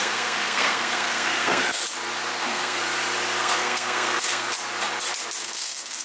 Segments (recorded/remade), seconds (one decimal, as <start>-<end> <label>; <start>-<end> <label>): 0.0-1.8 remade; 1.8-2.4 recorded; 2.4-2.8 remade; 2.8-3.4 recorded; 3.4-4.5 remade; 4.5-5.4 recorded; 5.4-6.0 remade

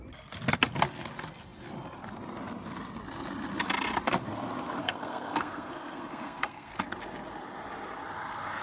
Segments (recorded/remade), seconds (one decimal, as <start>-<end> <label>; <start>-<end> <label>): 0.0-4.8 recorded; 4.8-6.7 remade; 6.7-8.6 recorded